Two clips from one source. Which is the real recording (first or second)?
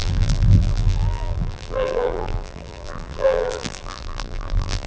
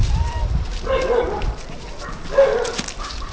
second